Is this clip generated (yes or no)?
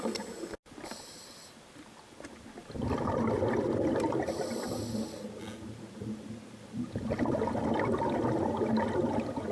no